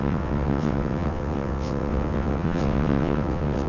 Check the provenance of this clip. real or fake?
fake